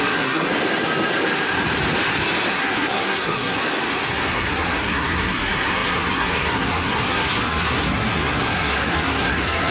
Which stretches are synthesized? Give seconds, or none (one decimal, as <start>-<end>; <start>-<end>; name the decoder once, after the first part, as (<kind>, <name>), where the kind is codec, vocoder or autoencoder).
0.0-0.5 (codec, SNAC); 2.5-3.6; 4.1-9.7

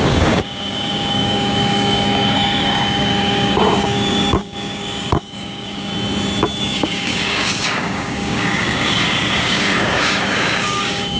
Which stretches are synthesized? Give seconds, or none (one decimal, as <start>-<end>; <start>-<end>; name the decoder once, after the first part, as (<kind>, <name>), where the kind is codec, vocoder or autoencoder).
0.0-5.9 (codec, DAC); 6.6-11.2

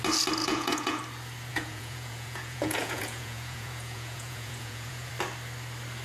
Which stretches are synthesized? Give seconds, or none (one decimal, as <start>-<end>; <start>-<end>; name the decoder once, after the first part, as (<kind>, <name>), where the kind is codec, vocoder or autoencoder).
0.4-1.0 (vocoder, Vocos); 1.5-5.1

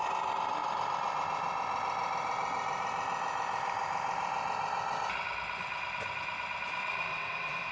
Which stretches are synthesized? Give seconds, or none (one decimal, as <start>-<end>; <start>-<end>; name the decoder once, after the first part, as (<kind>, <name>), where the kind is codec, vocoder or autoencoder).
7.1-7.7 (vocoder, WaveNeXt)